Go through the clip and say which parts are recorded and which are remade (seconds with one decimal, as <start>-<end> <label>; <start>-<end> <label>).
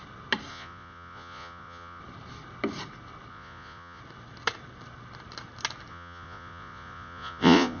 0.0-0.5 recorded; 0.5-2.0 remade; 2.0-3.3 recorded; 3.3-4.0 remade; 4.0-5.9 recorded; 5.9-7.8 remade